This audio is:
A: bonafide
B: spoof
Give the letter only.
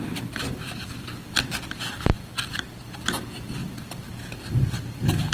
B